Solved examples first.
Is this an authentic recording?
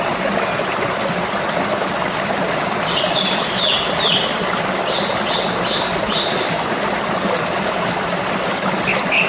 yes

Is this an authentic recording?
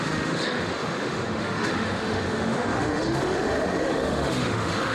no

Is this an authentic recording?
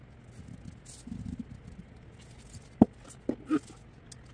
yes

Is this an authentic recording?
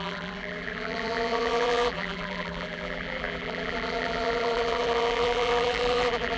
no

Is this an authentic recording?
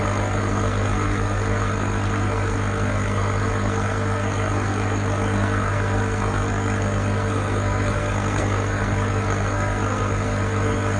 no